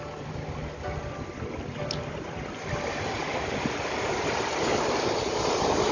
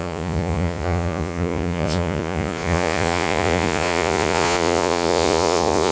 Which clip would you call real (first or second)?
first